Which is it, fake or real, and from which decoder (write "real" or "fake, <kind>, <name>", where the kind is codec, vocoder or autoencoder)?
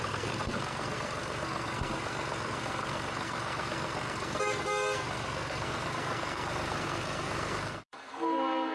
fake, codec, SNAC